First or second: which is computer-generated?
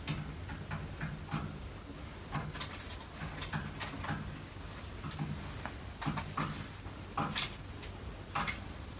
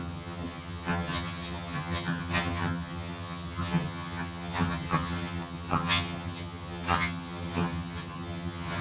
second